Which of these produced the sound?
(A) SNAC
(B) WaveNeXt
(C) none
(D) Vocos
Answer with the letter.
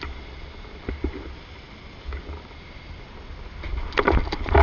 C